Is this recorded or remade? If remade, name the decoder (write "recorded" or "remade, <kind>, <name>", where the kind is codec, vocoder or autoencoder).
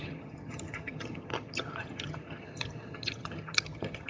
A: remade, vocoder, HiFi-GAN